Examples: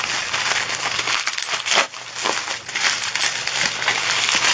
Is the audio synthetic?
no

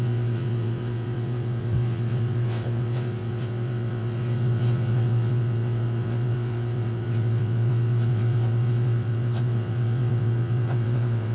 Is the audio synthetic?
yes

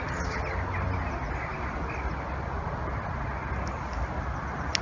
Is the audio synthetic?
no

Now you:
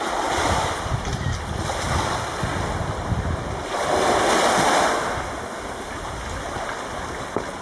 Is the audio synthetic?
no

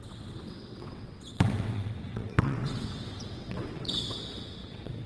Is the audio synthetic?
yes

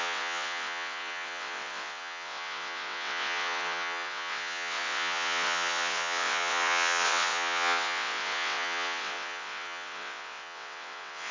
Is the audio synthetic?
yes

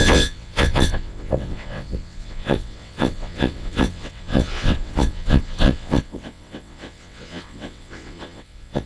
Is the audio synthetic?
yes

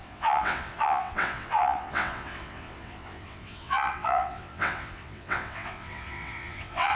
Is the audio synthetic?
yes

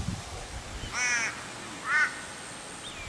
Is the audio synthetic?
no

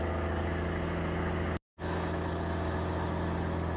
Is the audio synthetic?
no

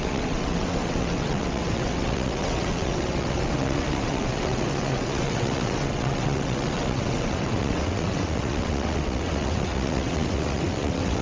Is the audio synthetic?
yes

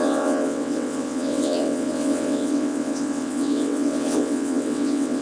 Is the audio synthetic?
yes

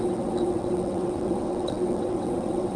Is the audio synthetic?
yes